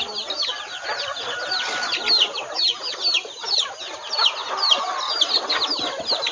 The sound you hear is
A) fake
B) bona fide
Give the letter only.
B